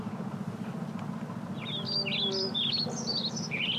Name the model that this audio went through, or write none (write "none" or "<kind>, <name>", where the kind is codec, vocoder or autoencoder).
none